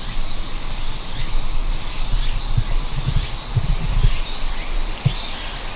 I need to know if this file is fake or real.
real